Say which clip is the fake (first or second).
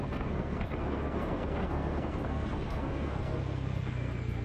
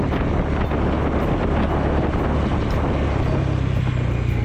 first